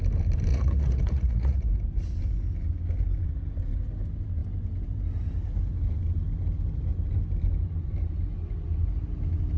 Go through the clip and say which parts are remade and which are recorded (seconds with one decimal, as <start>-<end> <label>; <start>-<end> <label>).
0.0-0.5 recorded; 0.5-1.7 remade; 1.7-9.6 recorded